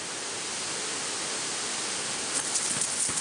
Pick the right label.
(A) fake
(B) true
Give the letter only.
B